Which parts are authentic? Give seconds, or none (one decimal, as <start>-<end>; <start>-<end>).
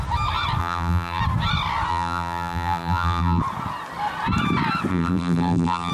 0.0-0.6; 1.2-1.9; 3.4-4.9